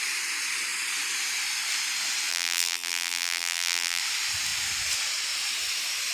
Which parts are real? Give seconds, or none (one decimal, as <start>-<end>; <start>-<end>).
0.0-2.3; 4.0-6.1